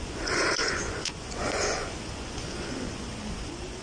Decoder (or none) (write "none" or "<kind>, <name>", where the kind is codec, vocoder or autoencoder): vocoder, Vocos